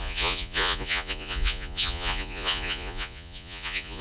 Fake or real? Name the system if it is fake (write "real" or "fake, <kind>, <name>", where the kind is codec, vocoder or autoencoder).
fake, vocoder, Vocos